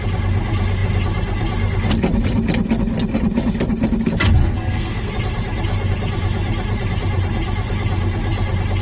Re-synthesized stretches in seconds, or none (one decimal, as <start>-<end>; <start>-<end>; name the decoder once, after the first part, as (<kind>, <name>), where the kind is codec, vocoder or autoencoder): 4.4-5.1 (codec, SNAC)